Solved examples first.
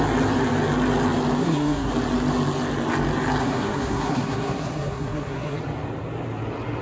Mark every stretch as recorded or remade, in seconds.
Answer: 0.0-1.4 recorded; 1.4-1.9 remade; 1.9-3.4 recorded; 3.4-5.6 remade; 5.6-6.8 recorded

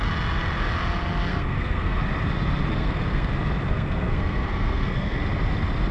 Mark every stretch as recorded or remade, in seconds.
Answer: 0.0-1.3 recorded; 1.3-2.0 remade; 2.0-2.7 recorded; 2.7-3.3 remade; 3.3-3.7 recorded; 3.7-5.2 remade; 5.2-5.9 recorded

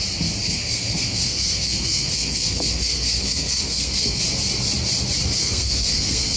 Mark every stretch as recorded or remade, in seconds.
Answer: 0.0-0.4 recorded; 0.4-4.2 remade; 4.2-5.4 recorded; 5.4-6.4 remade

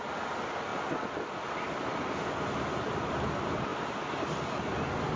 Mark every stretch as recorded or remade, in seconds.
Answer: 0.0-5.2 recorded

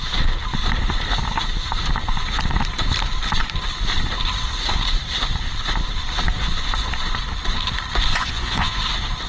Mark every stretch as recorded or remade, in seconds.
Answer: 0.0-8.1 recorded; 8.1-8.8 remade; 8.8-9.3 recorded

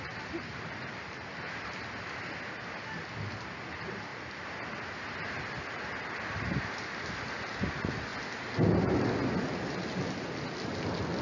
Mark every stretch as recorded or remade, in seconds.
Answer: 0.0-11.2 recorded

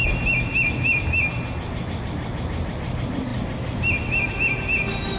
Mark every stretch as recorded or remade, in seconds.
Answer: 0.0-5.2 recorded

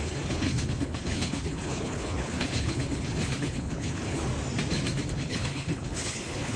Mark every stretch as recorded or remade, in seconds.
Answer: 0.0-4.3 remade; 4.3-5.1 recorded; 5.1-6.6 remade